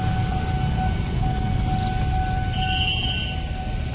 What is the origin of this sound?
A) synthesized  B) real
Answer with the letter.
B